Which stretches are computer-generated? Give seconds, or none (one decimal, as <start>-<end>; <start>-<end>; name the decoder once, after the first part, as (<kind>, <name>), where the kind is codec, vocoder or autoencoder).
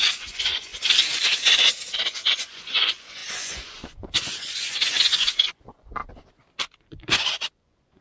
0.0-0.7 (vocoder, Vocos); 2.0-6.0; 6.8-8.0